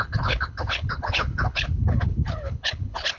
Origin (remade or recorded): remade